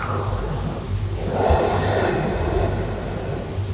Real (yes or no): yes